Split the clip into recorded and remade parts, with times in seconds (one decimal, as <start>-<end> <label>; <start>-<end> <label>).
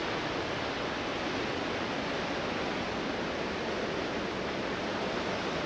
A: 0.0-5.7 recorded